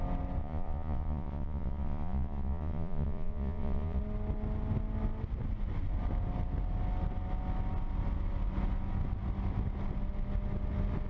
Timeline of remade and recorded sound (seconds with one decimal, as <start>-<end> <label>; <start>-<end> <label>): 0.0-0.4 recorded; 0.4-4.0 remade; 4.0-11.1 recorded